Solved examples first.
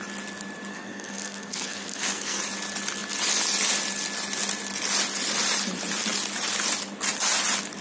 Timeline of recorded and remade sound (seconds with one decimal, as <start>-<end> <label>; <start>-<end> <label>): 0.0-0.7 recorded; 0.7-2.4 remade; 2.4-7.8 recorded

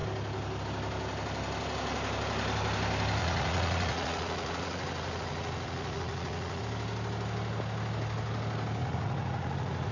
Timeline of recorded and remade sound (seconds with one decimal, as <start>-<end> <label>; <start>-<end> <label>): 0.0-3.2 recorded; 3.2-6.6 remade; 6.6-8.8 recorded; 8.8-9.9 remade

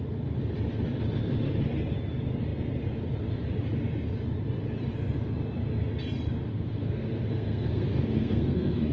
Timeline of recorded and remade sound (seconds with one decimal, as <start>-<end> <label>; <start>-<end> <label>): 0.0-6.5 recorded; 6.5-8.9 remade

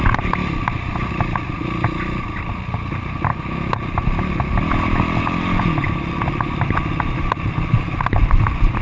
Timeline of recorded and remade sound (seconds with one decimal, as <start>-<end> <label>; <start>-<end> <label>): 0.0-8.8 recorded

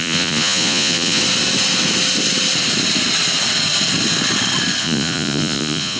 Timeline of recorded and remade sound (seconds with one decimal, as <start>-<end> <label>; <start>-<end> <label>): 0.0-1.2 remade; 1.2-4.8 recorded; 4.8-6.0 remade

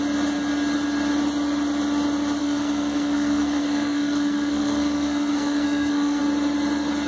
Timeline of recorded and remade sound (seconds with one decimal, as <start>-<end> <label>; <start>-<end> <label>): 0.0-2.4 recorded; 2.4-6.2 remade; 6.2-7.1 recorded

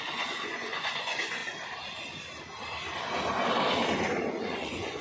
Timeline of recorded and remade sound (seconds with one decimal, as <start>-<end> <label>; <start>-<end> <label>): 0.0-1.4 remade; 1.4-4.4 recorded; 4.4-5.0 remade

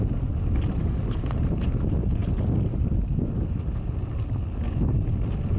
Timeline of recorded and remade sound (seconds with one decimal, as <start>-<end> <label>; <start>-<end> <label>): 0.0-0.8 recorded; 0.8-1.3 remade; 1.3-5.6 recorded